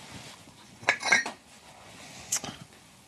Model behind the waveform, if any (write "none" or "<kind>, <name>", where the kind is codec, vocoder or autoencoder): vocoder, Vocos